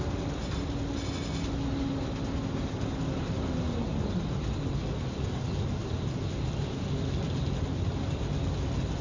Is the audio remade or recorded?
recorded